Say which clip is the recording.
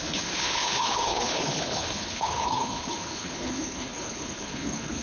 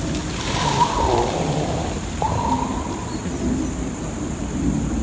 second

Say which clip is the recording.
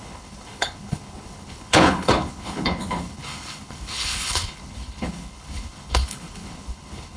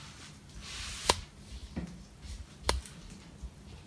second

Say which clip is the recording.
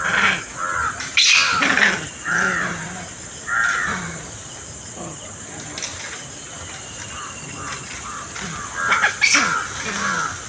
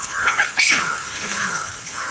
first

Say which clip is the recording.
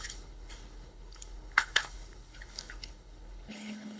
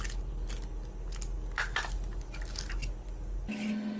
second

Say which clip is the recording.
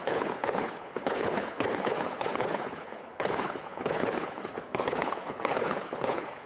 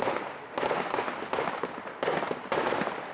second